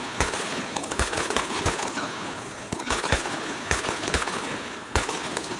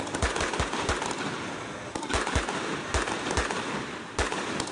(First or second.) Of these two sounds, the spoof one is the first